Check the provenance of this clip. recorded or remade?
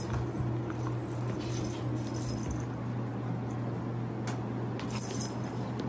recorded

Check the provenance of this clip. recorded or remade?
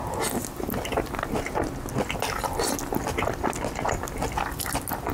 recorded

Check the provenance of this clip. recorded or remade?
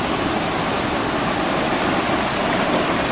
recorded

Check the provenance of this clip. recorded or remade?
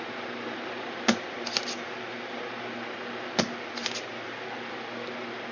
recorded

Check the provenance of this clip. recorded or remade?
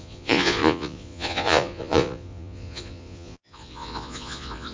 remade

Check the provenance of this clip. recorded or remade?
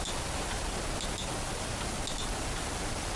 recorded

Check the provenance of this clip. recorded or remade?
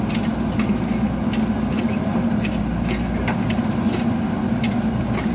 recorded